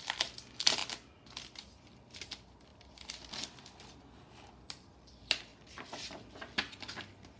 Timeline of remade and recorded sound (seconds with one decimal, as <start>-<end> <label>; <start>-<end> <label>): 0.0-7.4 recorded